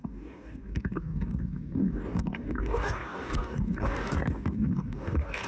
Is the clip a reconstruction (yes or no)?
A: yes